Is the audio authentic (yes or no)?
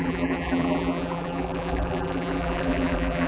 no